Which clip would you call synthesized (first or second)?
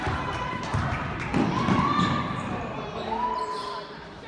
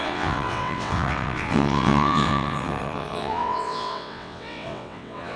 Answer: second